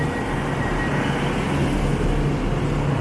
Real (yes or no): yes